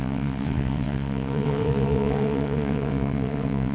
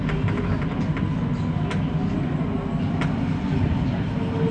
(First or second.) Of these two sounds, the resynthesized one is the first